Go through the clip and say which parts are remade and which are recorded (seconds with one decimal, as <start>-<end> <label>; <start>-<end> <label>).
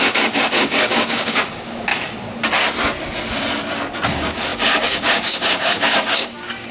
0.0-1.9 remade; 1.9-4.1 recorded; 4.1-6.7 remade